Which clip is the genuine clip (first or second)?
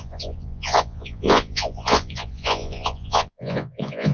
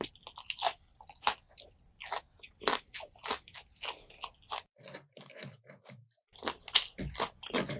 second